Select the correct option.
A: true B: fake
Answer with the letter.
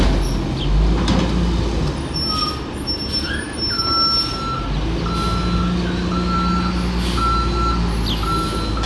A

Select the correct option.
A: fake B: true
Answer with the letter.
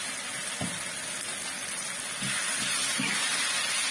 B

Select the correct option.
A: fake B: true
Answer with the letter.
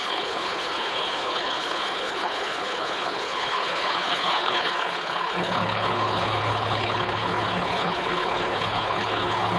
A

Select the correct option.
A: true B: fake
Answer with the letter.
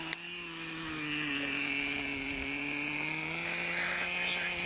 A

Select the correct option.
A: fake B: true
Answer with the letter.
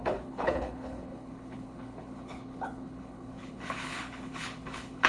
A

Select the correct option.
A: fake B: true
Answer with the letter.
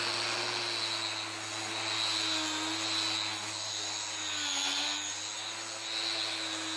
B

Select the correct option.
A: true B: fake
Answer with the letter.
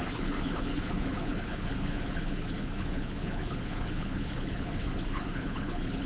B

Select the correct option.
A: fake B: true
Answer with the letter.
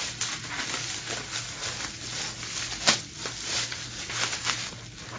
B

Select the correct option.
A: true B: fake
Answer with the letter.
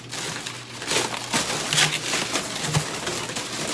A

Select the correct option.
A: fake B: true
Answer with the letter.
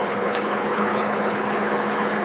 A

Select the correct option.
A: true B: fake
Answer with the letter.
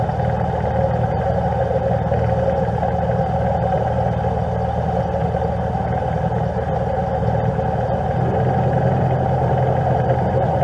A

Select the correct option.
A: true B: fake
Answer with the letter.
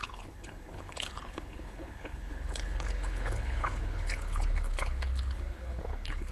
B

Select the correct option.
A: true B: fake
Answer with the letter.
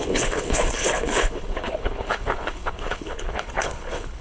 B